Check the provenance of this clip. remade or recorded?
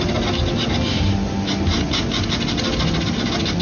recorded